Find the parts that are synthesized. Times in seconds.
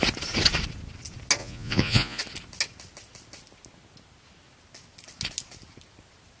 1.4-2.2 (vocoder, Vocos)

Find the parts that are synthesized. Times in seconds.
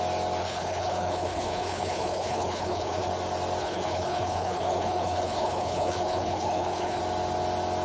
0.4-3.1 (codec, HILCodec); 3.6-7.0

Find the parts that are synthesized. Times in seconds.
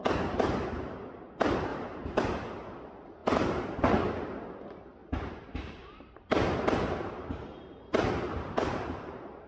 1.7-2.2 (vocoder, BigVGAN v2); 3.2-3.9; 5.0-9.5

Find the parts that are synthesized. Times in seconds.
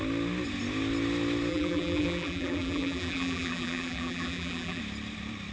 1.5-4.8 (vocoder, BigVGAN v2)